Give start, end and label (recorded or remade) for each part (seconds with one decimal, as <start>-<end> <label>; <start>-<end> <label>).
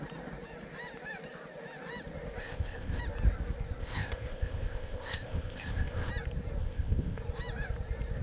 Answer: 0.0-2.4 recorded; 2.4-3.0 remade; 3.0-3.8 recorded; 3.8-6.1 remade; 6.1-6.6 recorded; 6.6-7.2 remade; 7.2-8.2 recorded